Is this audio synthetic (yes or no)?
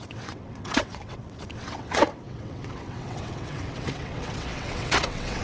yes